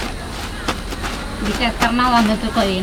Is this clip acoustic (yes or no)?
yes